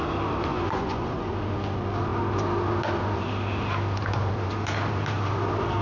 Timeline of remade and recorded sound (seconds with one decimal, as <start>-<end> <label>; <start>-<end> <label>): 0.0-0.5 recorded; 0.5-1.3 remade; 1.3-5.8 recorded